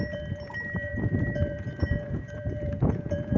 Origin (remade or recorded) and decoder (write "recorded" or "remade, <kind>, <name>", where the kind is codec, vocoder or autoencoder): remade, vocoder, Vocos